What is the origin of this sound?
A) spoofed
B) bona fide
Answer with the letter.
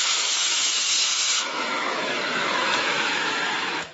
A